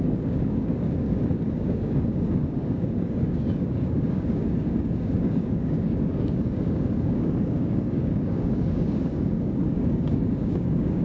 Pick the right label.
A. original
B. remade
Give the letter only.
B